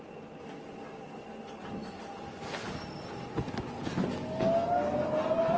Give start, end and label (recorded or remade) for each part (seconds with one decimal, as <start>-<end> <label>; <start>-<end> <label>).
0.0-5.6 recorded

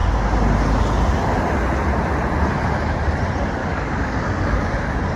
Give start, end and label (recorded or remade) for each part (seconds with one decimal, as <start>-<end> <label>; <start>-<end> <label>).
0.0-3.6 recorded; 3.6-4.7 remade; 4.7-5.2 recorded

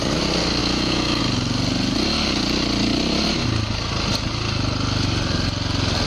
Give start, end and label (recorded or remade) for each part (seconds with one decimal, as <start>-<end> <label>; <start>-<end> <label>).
0.0-0.6 recorded; 0.6-1.2 remade; 1.2-6.1 recorded

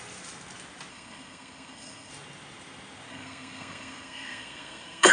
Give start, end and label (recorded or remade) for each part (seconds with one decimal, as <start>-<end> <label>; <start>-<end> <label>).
0.0-0.9 recorded; 0.9-2.1 remade; 2.1-3.1 recorded; 3.1-5.1 remade